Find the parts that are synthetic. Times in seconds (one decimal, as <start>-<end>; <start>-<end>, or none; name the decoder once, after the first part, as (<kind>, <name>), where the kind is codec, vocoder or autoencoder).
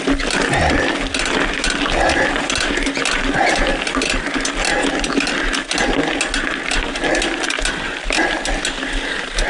none